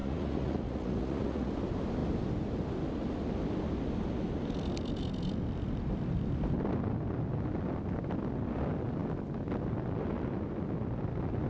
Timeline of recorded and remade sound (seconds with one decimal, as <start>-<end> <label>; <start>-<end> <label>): 0.0-1.5 remade; 1.5-11.5 recorded